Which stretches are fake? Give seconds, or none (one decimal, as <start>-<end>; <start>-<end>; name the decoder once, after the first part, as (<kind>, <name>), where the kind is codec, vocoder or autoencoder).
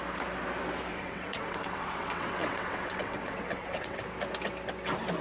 0.9-4.0 (vocoder, WaveNeXt)